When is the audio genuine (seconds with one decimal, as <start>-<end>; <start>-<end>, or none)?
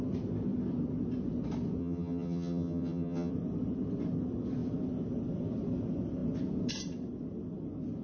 0.0-1.8; 3.3-8.0